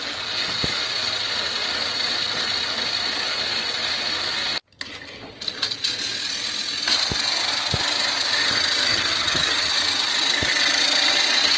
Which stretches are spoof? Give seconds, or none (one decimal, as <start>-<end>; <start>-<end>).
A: 8.9-9.7